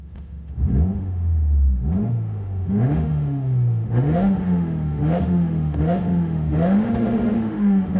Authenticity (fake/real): fake